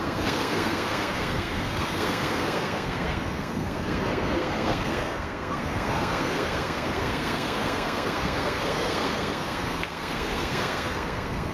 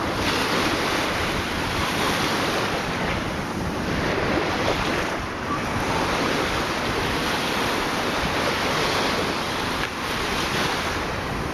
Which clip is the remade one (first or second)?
first